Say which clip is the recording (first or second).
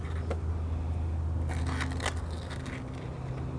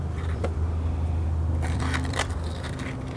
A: first